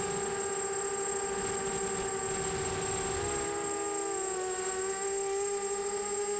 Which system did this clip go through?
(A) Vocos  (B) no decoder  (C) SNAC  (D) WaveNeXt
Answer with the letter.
B